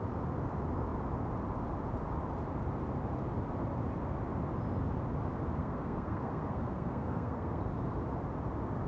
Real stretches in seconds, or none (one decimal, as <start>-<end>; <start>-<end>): 0.0-5.6; 7.6-8.9